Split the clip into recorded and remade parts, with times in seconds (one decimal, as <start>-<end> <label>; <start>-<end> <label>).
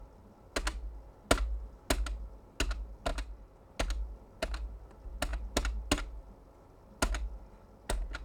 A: 0.0-8.2 recorded